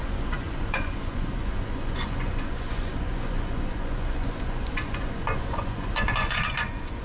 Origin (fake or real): fake